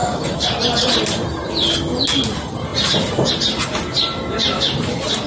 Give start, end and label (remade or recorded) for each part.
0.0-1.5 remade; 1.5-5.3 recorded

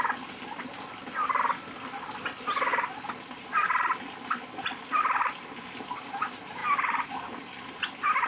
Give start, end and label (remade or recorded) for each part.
0.0-8.3 recorded